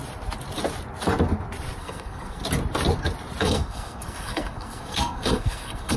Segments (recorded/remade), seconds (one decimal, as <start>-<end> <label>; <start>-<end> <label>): 0.0-1.8 recorded; 1.8-2.4 remade; 2.4-3.4 recorded; 3.4-6.0 remade